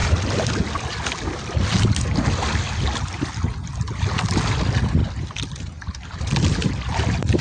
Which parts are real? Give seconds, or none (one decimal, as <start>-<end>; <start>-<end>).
0.0-7.4